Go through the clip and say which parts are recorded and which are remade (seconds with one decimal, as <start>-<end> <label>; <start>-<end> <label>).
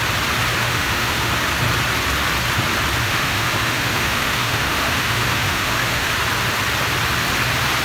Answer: 0.0-0.6 recorded; 0.6-1.3 remade; 1.3-3.0 recorded; 3.0-6.1 remade; 6.1-7.8 recorded